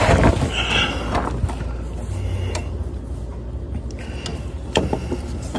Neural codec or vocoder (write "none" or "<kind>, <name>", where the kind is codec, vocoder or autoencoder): none